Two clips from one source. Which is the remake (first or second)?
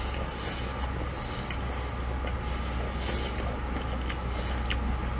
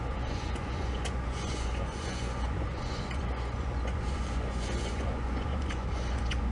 second